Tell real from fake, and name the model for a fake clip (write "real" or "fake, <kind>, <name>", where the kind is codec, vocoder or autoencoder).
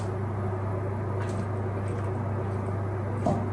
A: real